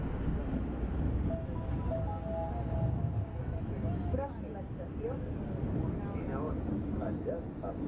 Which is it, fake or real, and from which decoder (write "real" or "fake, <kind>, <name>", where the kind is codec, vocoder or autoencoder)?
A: real